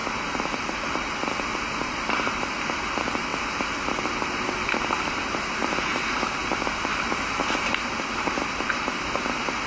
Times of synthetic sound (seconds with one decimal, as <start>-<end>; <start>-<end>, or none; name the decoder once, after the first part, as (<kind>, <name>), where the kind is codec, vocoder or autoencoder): none